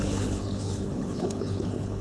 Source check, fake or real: fake